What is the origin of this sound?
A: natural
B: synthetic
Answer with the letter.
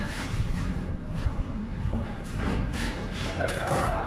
B